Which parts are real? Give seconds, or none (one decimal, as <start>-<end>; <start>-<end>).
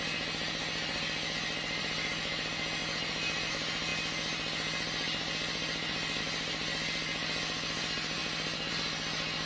0.0-9.5